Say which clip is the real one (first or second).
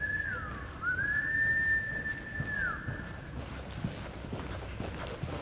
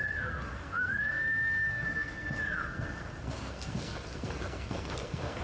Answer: first